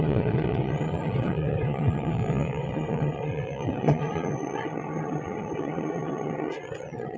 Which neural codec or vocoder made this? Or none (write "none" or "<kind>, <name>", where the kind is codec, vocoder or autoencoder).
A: vocoder, Vocos